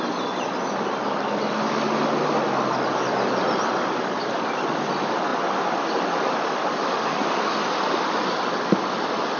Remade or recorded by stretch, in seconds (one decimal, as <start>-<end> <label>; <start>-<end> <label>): 0.0-9.4 recorded